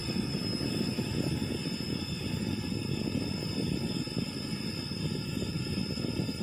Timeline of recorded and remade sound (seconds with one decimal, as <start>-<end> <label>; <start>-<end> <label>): 0.0-6.4 recorded